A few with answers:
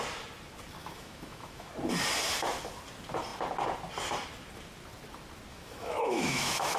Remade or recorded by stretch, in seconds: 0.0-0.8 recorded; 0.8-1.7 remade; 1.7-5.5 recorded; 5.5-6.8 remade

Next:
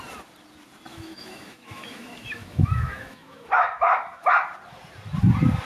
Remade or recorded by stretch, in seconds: 0.0-0.9 recorded; 0.9-4.3 remade; 4.3-5.6 recorded

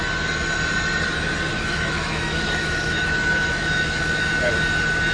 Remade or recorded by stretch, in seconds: 0.0-1.5 recorded; 1.5-4.3 remade; 4.3-5.1 recorded

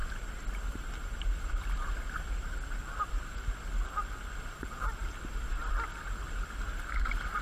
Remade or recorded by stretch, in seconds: 0.0-7.4 recorded

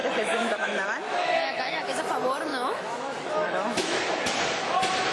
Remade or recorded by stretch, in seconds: 0.0-2.0 remade; 2.0-2.5 recorded; 2.5-4.0 remade; 4.0-5.1 recorded

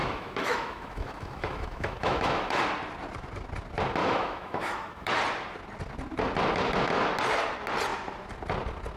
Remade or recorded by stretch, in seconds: 0.0-2.6 remade; 2.6-4.0 recorded; 4.0-5.1 remade; 5.1-9.0 recorded